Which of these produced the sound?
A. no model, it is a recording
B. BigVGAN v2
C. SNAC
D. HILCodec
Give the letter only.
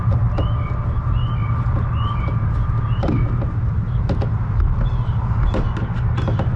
A